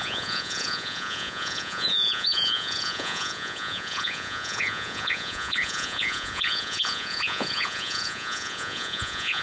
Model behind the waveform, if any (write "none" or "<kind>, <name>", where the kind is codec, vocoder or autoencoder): vocoder, Vocos